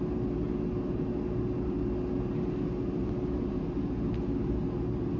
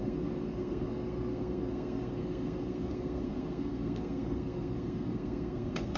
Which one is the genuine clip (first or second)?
first